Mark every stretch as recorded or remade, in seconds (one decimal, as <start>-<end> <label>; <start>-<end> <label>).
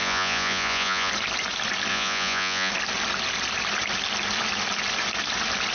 0.0-1.1 remade; 1.1-1.9 recorded; 1.9-2.7 remade; 2.7-5.7 recorded